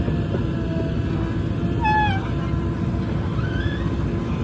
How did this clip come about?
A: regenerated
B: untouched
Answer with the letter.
B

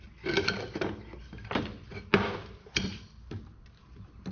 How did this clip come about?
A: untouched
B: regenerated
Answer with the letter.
A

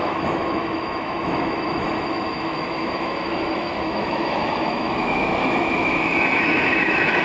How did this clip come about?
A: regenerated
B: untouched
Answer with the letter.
A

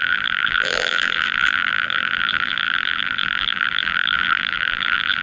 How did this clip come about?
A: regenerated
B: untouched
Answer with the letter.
A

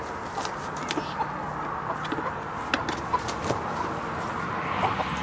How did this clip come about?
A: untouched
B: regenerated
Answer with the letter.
A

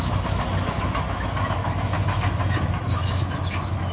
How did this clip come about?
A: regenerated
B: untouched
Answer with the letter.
A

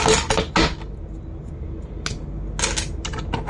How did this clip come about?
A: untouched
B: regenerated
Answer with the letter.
A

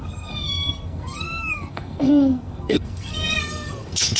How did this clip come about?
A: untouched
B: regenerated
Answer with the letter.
B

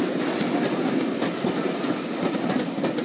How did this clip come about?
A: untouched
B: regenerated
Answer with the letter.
A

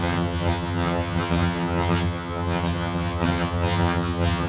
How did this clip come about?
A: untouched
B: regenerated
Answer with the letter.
B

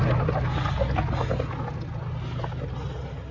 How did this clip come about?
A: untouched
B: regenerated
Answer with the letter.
A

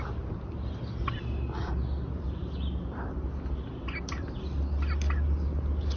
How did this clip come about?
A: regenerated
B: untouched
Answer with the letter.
B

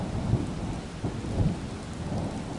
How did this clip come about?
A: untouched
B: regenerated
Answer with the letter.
A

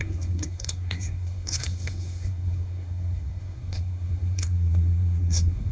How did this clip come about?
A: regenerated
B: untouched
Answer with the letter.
A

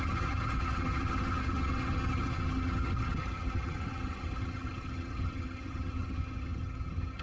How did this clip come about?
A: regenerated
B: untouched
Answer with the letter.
A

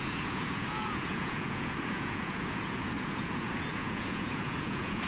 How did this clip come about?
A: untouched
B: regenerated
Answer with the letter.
B